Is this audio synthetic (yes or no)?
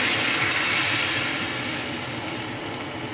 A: no